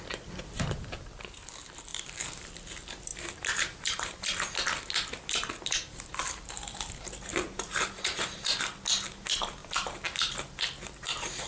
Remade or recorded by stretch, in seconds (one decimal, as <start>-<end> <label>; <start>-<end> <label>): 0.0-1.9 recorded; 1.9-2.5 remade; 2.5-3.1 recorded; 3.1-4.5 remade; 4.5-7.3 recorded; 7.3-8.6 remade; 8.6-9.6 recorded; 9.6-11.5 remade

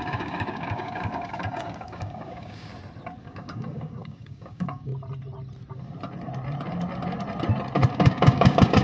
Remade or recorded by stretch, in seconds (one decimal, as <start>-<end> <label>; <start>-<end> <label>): 0.0-2.7 remade; 2.7-3.2 recorded; 3.2-4.9 remade; 4.9-7.9 recorded; 7.9-8.8 remade

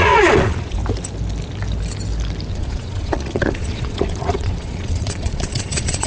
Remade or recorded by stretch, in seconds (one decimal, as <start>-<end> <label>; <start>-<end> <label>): 0.0-0.8 remade; 0.8-2.5 recorded; 2.5-6.1 remade

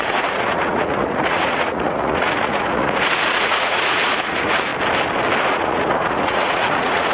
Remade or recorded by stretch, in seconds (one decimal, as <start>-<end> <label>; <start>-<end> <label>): 0.0-4.7 remade; 4.7-5.5 recorded; 5.5-7.1 remade

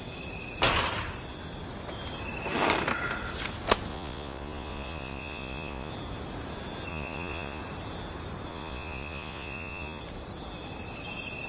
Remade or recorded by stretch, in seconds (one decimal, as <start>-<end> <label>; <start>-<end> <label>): 0.0-3.9 recorded; 3.9-5.9 remade; 5.9-6.9 recorded; 6.9-7.6 remade; 7.6-8.5 recorded; 8.5-10.0 remade; 10.0-11.5 recorded

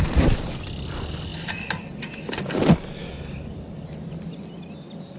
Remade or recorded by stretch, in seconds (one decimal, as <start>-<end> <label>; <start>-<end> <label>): 0.0-5.2 recorded

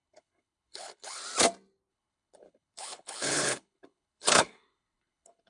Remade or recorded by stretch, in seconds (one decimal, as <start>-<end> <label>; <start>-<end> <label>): 0.0-1.2 remade; 1.2-1.9 recorded; 1.9-5.5 remade